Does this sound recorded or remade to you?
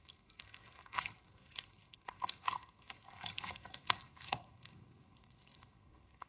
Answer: remade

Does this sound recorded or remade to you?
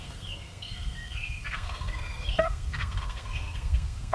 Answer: remade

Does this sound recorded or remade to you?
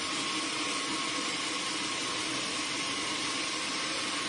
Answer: recorded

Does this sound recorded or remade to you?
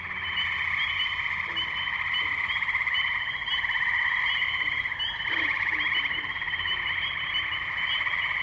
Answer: recorded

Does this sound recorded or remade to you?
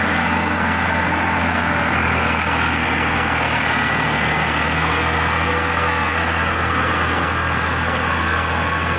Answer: remade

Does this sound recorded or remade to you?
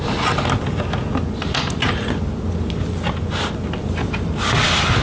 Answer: recorded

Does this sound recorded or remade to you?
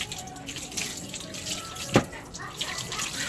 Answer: recorded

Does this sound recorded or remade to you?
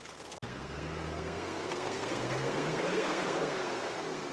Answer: remade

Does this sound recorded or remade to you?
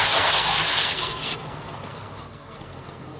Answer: remade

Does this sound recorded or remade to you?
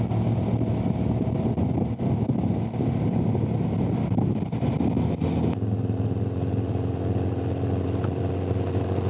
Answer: recorded